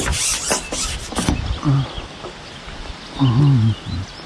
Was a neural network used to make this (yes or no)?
no